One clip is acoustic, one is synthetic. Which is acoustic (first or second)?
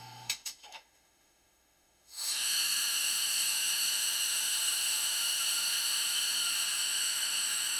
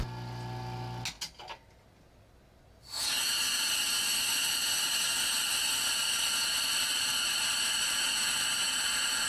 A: second